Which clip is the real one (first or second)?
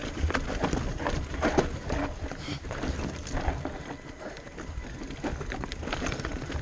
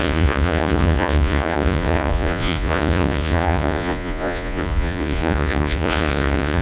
first